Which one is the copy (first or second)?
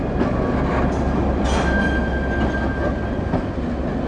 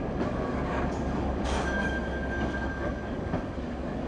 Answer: second